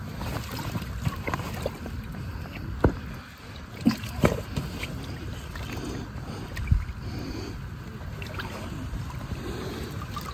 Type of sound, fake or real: real